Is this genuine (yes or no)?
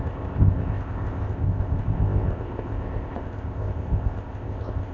no